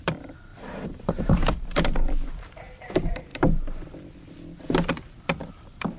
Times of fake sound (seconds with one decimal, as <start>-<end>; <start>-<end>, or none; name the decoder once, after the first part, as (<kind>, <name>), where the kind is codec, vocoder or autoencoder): 0.0-3.3 (vocoder, BigVGAN v2); 5.5-6.0